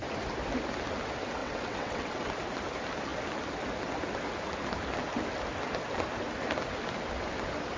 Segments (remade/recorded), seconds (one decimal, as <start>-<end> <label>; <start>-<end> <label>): 0.0-1.4 recorded; 1.4-2.3 remade; 2.3-7.8 recorded